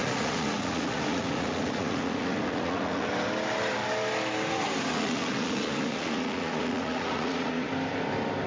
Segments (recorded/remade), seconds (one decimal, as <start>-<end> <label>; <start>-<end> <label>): 0.0-3.1 remade; 3.1-4.9 recorded; 4.9-7.7 remade; 7.7-8.5 recorded